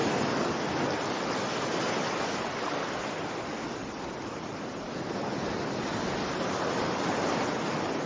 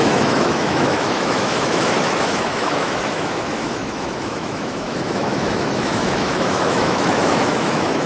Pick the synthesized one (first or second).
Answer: second